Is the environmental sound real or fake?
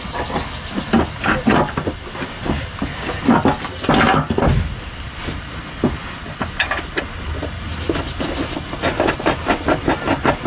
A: real